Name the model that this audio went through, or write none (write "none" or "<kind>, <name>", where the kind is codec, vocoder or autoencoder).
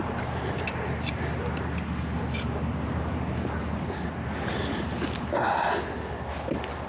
none